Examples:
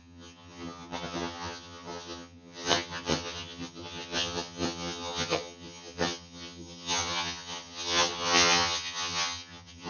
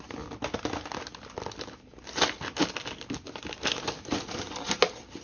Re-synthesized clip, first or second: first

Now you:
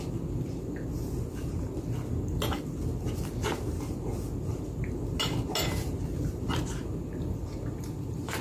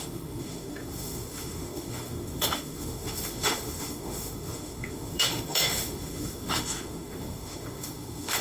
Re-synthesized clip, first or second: second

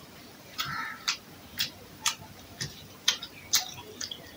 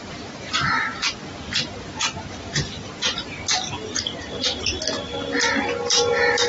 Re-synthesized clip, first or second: first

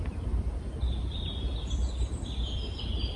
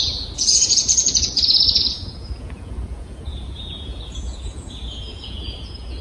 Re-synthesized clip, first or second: second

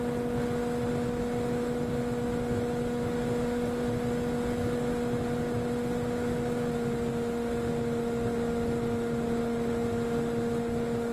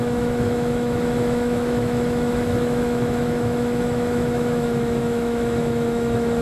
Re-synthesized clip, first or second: second